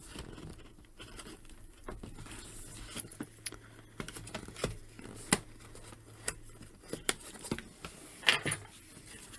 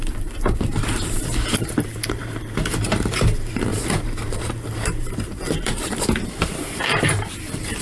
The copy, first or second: second